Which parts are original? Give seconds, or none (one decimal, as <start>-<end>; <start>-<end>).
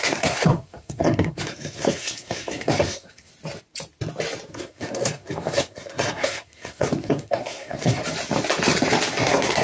3.3-4.5; 8.0-9.2